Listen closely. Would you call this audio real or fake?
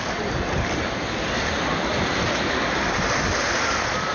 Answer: real